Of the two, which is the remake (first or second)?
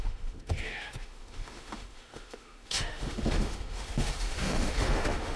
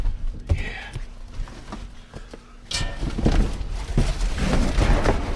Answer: first